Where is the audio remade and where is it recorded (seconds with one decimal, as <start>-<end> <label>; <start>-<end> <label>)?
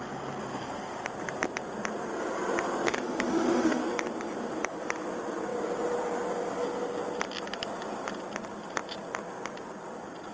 0.0-2.9 recorded; 2.9-3.8 remade; 3.8-10.3 recorded